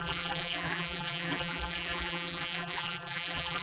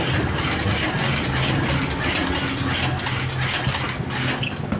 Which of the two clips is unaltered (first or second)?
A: second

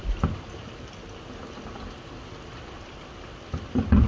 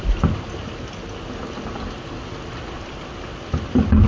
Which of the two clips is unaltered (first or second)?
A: second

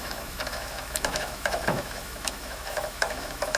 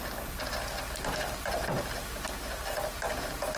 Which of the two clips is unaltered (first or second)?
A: second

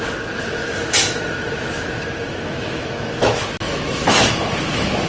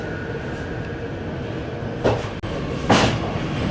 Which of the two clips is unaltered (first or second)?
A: second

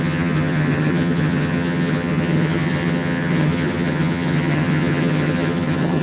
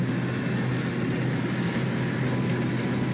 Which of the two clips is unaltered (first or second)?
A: second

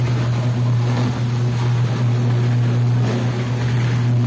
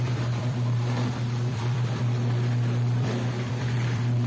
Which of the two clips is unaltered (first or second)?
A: first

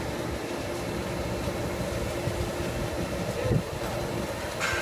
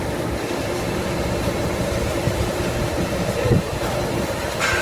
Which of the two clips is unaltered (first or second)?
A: first